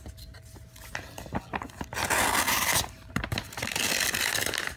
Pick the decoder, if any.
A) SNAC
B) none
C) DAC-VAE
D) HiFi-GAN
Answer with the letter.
B